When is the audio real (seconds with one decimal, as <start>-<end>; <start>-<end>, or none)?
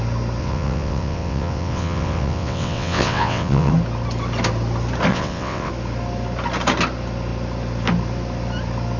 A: 0.0-0.4; 3.7-5.1; 5.7-9.0